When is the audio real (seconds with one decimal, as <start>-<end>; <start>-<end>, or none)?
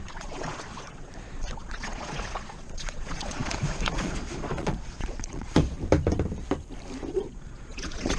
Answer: 5.6-7.1